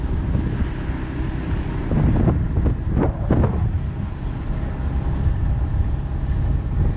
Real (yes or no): yes